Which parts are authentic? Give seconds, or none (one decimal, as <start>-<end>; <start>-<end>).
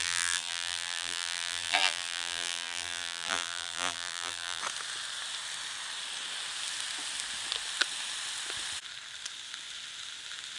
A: 4.6-10.6